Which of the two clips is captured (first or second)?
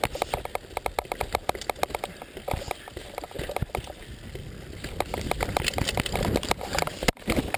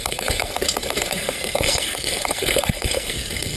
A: first